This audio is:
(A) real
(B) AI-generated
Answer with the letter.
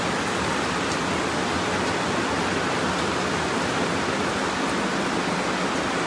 A